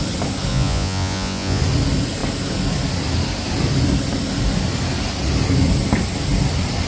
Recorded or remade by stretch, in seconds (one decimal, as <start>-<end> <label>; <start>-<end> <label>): 0.0-0.5 recorded; 0.5-1.6 remade; 1.6-6.9 recorded